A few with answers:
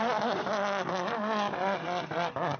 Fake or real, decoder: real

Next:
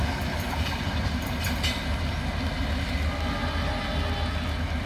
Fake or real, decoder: real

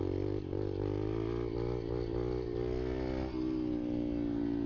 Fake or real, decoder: real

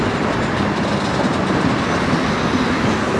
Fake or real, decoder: real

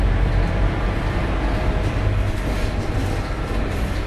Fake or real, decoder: real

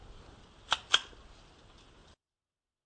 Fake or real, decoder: real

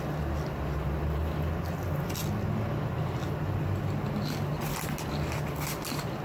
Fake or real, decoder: real